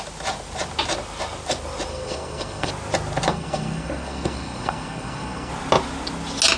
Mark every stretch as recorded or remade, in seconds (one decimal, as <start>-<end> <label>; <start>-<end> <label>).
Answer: 0.0-1.9 recorded; 1.9-2.7 remade; 2.7-3.3 recorded; 3.3-5.5 remade; 5.5-6.6 recorded